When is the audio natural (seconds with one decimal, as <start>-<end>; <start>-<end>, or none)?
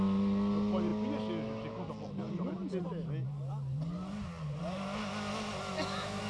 0.0-6.3